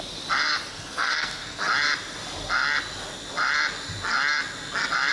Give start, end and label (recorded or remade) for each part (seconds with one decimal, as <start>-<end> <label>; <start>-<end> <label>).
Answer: 0.0-0.7 recorded; 0.7-1.6 remade; 1.6-5.1 recorded